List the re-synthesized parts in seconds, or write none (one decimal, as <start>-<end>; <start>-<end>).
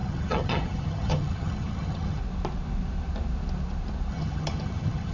0.0-2.2; 4.1-5.1